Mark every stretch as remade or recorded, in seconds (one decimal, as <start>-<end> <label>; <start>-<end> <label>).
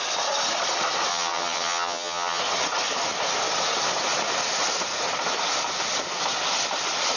0.0-1.1 recorded; 1.1-2.4 remade; 2.4-7.2 recorded